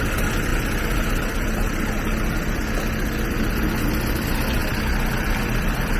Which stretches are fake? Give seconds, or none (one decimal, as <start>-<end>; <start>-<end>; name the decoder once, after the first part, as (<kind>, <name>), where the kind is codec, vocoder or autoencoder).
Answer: 4.6-5.1 (vocoder, BigVGAN v2)